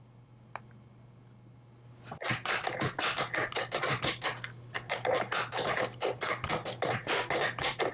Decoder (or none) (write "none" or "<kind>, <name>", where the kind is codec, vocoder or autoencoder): none